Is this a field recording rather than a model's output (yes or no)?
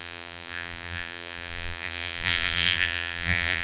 no